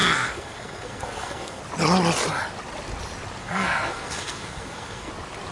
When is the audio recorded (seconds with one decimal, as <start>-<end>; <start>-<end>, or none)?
1.6-3.4; 5.1-5.5